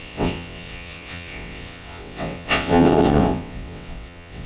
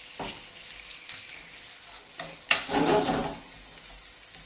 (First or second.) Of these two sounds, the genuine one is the second